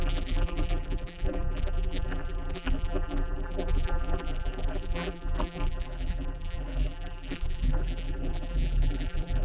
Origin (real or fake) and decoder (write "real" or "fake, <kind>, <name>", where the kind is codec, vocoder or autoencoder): fake, vocoder, BigVGAN v2